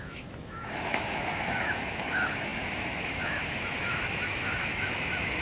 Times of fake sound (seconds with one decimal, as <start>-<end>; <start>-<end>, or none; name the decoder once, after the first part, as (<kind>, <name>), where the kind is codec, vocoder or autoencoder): 0.0-5.4 (autoencoder, DAC-VAE)